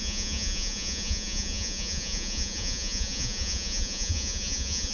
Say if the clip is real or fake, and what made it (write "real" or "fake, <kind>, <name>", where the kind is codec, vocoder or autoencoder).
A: fake, vocoder, Vocos